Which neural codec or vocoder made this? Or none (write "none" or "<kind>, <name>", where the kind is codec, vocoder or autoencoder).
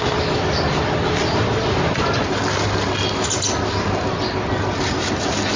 none